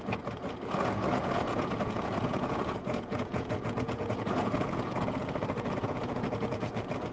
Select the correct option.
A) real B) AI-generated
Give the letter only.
B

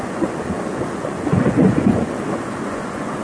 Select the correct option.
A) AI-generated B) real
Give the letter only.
A